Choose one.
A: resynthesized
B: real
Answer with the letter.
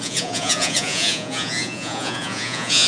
A